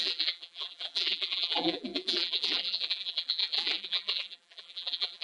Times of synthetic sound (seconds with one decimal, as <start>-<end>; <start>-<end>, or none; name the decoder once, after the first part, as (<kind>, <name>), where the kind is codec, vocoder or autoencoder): 0.0-5.2 (vocoder, BigVGAN v2)